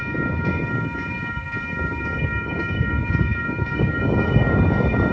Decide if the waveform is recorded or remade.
remade